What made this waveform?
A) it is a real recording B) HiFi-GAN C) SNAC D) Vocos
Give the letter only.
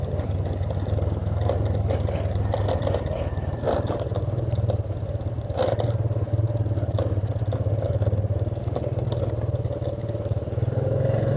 A